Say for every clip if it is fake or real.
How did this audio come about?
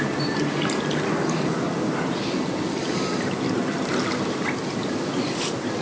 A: real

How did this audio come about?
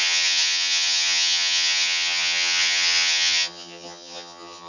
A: fake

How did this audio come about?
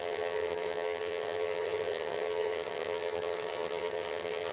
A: fake